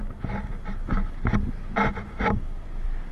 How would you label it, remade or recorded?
recorded